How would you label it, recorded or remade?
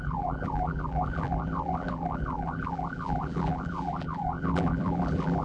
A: remade